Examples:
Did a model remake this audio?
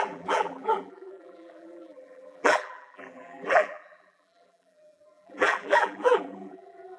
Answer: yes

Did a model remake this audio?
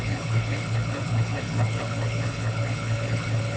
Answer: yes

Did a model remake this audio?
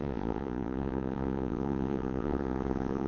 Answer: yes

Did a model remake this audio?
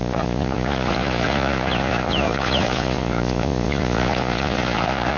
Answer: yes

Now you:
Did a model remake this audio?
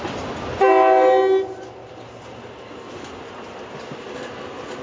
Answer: no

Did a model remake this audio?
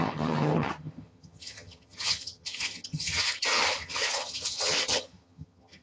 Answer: yes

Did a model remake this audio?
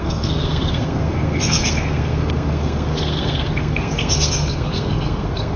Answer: yes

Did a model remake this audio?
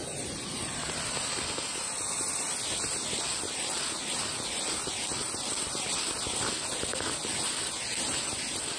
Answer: no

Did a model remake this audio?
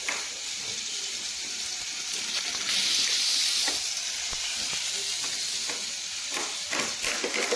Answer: no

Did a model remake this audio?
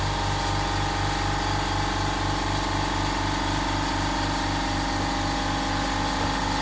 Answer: no